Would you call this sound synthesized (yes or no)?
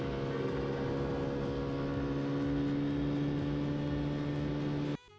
no